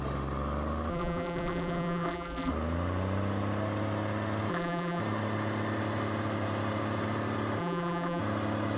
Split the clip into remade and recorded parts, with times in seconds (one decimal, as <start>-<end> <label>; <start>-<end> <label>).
0.0-0.9 recorded; 0.9-2.5 remade; 2.5-4.5 recorded; 4.5-5.0 remade; 5.0-7.6 recorded; 7.6-8.2 remade; 8.2-8.8 recorded